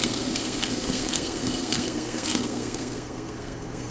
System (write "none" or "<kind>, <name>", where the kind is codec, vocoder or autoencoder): codec, SNAC